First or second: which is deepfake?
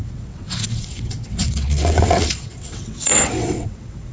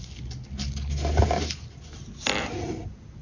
first